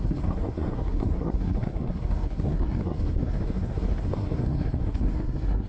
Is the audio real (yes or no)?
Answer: no